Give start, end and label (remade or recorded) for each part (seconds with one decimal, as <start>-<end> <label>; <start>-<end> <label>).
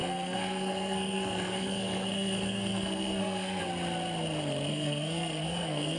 0.0-3.6 remade; 3.6-4.7 recorded; 4.7-6.0 remade